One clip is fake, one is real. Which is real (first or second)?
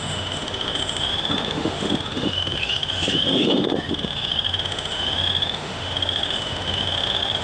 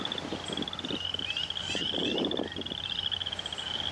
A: second